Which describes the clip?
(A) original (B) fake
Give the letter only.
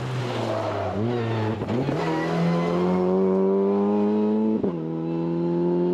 A